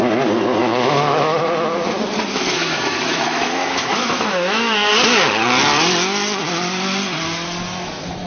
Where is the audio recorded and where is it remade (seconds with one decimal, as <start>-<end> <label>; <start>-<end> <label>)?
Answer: 0.0-0.6 recorded; 0.6-1.4 remade; 1.4-2.3 recorded; 2.3-4.9 remade; 4.9-8.3 recorded